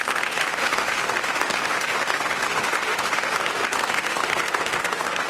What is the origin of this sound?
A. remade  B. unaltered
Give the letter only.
A